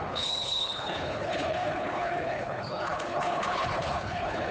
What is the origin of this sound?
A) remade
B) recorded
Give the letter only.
A